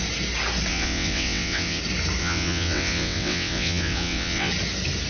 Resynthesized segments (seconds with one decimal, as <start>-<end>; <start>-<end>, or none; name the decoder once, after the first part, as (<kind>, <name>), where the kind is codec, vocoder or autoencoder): 0.7-1.8 (vocoder, WaveNeXt); 2.2-4.5